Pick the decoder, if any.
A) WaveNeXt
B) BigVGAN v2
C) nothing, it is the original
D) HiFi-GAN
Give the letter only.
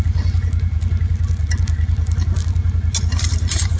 C